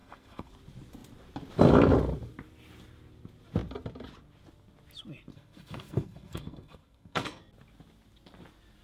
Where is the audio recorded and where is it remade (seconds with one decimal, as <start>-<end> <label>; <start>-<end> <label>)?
0.0-0.5 remade; 0.5-5.3 recorded; 5.3-7.4 remade; 7.4-8.8 recorded